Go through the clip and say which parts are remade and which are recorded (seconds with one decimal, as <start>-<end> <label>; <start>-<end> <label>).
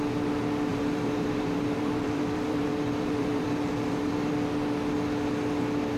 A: 0.0-0.7 recorded; 0.7-4.3 remade; 4.3-6.0 recorded